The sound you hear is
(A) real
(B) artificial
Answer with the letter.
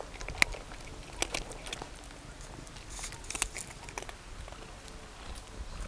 A